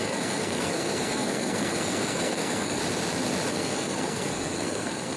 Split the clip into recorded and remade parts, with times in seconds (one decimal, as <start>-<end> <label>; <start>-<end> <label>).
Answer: 0.0-2.8 remade; 2.8-3.5 recorded; 3.5-5.2 remade